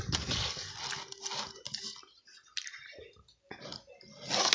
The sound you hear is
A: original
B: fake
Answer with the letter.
A